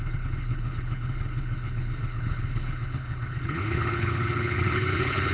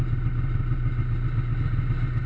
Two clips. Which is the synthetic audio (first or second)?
first